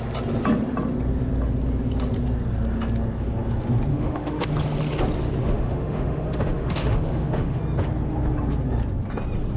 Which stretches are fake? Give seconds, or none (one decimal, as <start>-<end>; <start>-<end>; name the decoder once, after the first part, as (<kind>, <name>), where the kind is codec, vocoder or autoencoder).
3.9-4.5 (autoencoder, DAC-VAE); 5.4-7.6